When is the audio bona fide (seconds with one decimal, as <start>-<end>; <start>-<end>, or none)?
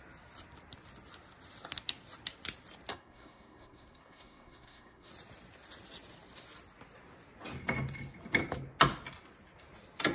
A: 0.0-2.9; 5.1-10.1